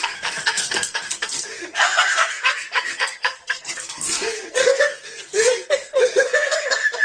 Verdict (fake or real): fake